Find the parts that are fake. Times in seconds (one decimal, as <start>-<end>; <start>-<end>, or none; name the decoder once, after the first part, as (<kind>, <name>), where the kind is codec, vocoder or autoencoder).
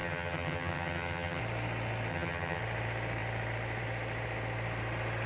0.0-1.4 (vocoder, HiFi-GAN); 2.1-2.6